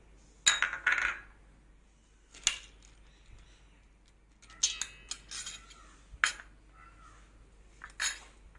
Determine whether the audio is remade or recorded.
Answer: recorded